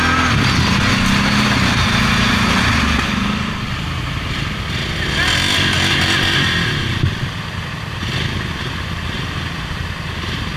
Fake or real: real